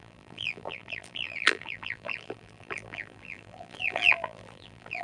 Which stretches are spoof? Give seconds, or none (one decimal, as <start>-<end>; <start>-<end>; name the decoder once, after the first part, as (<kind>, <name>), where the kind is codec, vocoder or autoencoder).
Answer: 0.0-5.0 (vocoder, BigVGAN v2)